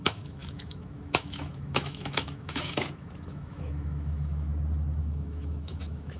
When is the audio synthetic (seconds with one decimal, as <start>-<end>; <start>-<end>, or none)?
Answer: 0.0-4.5; 5.0-6.2